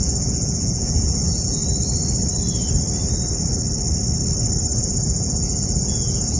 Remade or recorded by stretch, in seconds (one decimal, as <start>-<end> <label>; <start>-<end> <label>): 0.0-1.6 remade; 1.6-4.8 recorded; 4.8-6.4 remade